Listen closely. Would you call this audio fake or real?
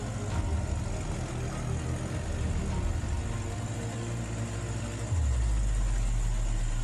real